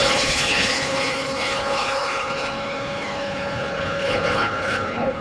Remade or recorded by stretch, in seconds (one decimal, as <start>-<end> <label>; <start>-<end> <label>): 0.0-5.2 remade